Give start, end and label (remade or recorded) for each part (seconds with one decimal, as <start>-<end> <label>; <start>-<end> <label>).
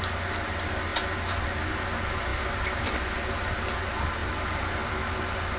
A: 0.0-5.6 recorded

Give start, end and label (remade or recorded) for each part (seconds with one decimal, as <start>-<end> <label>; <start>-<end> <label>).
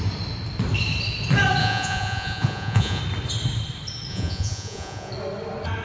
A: 0.0-1.6 recorded; 1.6-3.0 remade; 3.0-4.1 recorded; 4.1-5.1 remade; 5.1-5.8 recorded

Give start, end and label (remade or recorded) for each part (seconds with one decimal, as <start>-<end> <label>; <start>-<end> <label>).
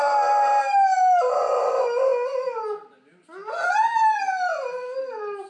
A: 0.0-5.5 recorded